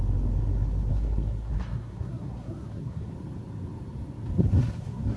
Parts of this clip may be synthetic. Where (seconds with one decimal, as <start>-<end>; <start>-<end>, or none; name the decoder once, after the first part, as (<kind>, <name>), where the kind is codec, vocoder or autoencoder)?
0.9-3.1 (codec, SNAC); 4.4-5.2